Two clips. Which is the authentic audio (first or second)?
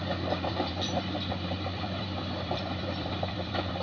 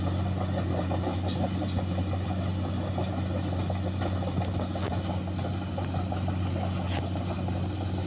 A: second